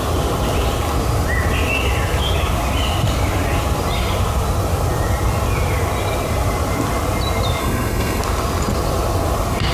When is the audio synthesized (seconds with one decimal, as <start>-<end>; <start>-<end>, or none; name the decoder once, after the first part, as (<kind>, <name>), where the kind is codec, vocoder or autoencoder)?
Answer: 7.6-8.2 (codec, SNAC)